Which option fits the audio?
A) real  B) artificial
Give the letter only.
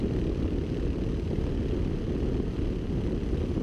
A